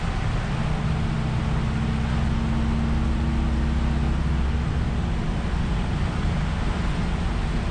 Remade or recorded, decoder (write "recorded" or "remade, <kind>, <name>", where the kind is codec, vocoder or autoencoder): recorded